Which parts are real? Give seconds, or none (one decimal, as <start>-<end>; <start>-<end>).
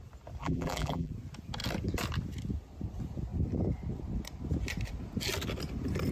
0.0-0.4; 1.1-6.1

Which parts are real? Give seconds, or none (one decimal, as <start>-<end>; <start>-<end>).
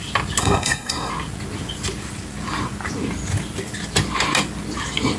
0.0-0.4; 1.1-5.2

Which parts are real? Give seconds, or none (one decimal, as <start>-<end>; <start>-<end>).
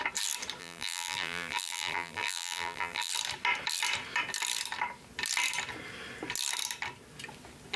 0.0-0.6; 3.1-7.8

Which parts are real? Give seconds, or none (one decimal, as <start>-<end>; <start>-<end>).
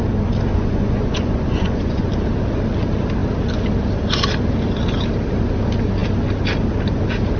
0.0-0.5; 2.1-7.4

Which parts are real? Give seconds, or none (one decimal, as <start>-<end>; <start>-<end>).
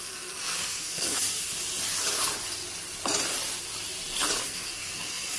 1.5-4.4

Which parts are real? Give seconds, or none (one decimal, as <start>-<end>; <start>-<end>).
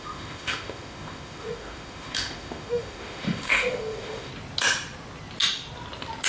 4.3-6.3